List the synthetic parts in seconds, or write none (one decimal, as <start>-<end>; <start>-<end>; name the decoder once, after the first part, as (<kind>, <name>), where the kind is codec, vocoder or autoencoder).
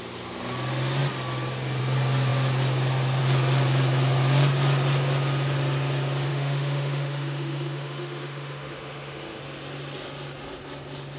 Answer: 6.3-9.4 (autoencoder, DAC-VAE)